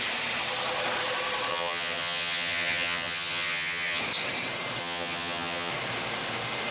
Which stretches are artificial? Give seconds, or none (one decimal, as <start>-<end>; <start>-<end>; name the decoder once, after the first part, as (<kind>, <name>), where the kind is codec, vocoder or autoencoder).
1.5-4.0 (vocoder, HiFi-GAN); 4.8-5.7